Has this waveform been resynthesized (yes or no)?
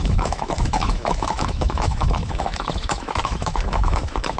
yes